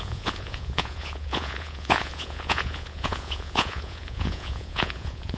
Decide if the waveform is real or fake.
fake